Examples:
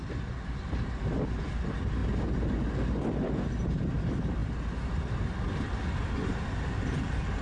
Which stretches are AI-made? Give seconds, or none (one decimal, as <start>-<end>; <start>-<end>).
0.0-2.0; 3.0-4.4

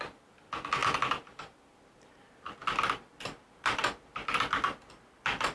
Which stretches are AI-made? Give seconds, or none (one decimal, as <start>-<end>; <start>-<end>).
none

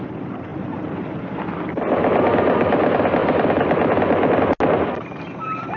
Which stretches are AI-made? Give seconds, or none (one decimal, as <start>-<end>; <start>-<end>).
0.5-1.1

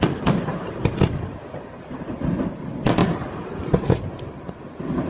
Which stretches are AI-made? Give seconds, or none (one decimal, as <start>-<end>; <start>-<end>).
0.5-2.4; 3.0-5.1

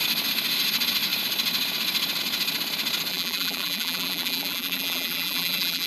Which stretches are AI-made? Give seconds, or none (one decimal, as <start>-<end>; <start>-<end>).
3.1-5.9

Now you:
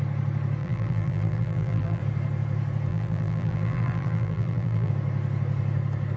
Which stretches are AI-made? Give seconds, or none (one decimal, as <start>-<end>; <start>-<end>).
0.6-2.0; 2.9-4.9